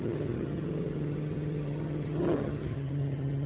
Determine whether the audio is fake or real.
fake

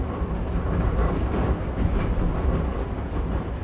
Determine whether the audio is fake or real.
real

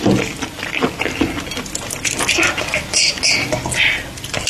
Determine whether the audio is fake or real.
real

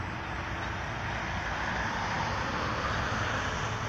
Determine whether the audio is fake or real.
real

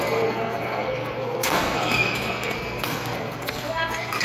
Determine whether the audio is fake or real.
fake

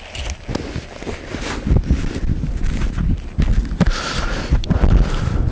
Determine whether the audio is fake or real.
real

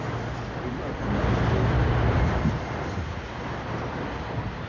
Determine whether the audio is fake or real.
real